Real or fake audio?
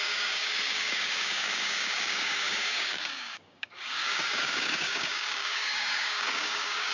fake